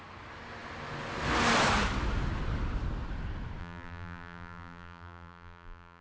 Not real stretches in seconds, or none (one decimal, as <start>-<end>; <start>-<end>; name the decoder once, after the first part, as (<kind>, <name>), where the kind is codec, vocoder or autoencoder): 3.6-6.0 (vocoder, BigVGAN v2)